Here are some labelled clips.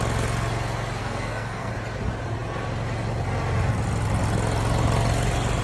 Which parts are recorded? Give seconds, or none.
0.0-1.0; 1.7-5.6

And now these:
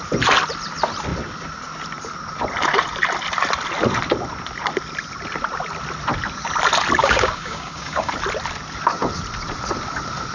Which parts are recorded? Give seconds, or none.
0.0-7.0; 8.1-10.3